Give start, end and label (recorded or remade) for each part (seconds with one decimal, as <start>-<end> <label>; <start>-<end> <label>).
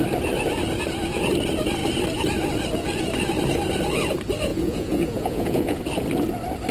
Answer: 0.0-4.5 recorded; 4.5-5.8 remade; 5.8-6.7 recorded